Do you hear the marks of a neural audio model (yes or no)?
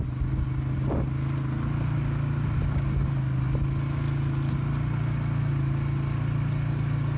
no